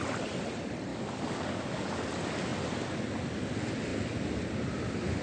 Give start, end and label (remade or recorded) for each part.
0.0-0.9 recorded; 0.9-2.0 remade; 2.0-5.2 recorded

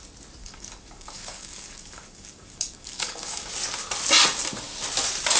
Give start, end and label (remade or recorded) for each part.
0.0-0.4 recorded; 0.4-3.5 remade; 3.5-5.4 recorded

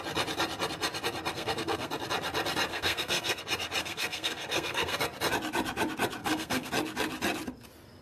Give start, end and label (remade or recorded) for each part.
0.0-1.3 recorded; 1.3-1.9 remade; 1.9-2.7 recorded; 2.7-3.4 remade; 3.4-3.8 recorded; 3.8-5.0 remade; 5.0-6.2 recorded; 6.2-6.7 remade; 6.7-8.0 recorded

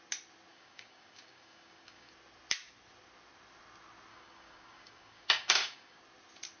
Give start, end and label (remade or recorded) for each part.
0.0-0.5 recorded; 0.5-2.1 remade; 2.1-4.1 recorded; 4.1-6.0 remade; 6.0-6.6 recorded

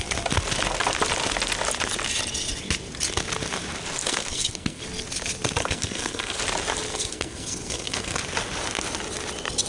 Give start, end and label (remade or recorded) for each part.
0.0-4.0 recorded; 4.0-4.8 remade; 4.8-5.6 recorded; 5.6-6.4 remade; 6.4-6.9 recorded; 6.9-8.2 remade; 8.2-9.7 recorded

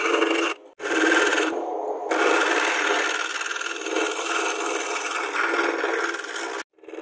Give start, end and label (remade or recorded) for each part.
0.0-1.3 recorded; 1.3-1.9 remade; 1.9-7.0 recorded